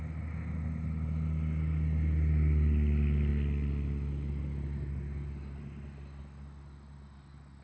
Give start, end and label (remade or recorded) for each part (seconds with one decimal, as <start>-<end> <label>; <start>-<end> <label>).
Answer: 0.0-7.6 recorded